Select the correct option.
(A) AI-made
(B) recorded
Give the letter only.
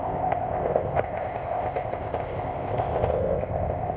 A